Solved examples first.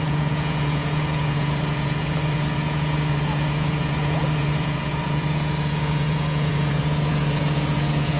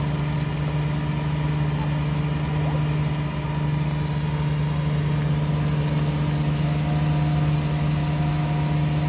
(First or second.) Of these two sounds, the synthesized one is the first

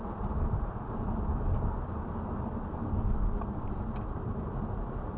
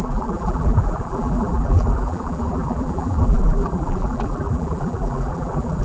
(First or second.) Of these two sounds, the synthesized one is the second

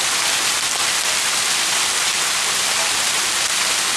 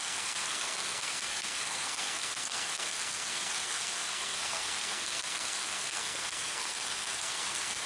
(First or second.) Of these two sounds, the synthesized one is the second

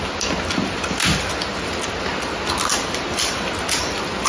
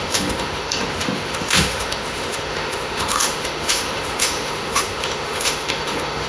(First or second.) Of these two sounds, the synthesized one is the second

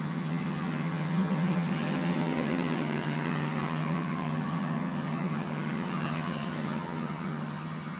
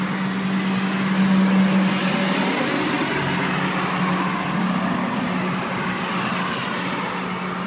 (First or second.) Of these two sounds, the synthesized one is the first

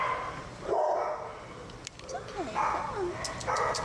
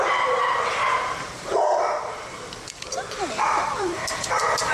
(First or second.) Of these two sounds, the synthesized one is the second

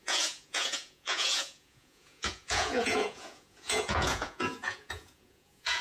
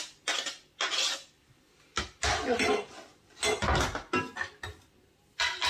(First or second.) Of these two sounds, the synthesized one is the first